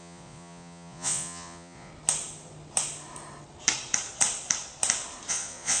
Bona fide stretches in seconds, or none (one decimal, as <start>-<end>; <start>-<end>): 1.9-5.3